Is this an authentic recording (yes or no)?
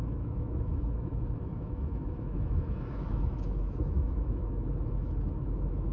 no